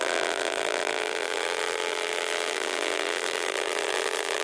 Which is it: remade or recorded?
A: remade